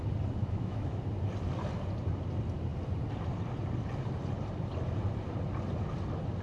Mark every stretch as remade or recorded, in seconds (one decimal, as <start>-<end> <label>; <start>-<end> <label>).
0.0-0.4 recorded; 0.4-1.0 remade; 1.0-6.4 recorded